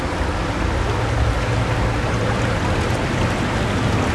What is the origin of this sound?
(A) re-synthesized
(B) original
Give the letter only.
B